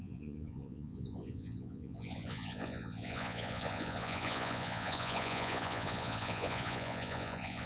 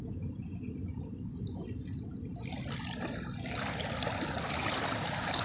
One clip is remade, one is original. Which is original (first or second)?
second